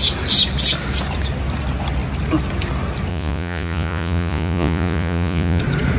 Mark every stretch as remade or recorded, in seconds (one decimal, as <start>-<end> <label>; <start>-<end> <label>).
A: 0.0-3.1 recorded; 3.1-5.6 remade; 5.6-6.0 recorded